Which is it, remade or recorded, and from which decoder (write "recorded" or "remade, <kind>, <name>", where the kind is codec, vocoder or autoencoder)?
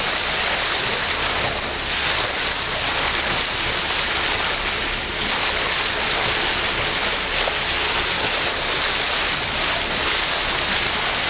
recorded